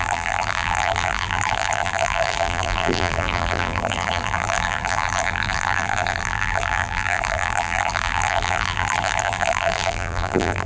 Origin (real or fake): fake